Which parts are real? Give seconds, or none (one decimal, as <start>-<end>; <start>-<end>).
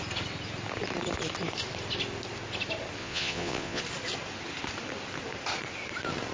0.0-3.0; 3.8-6.3